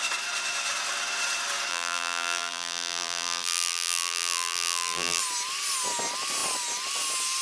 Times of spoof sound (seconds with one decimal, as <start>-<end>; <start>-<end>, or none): 1.7-5.2